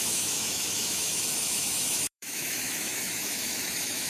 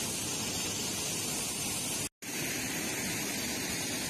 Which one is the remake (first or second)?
first